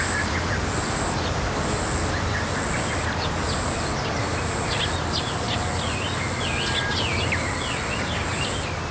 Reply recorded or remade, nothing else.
recorded